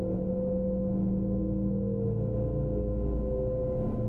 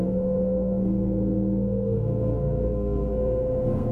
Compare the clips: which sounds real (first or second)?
first